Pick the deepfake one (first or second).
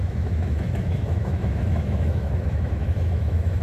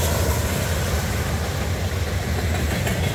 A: first